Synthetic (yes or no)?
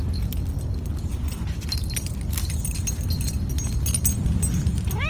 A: no